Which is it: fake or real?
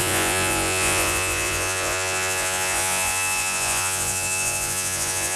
fake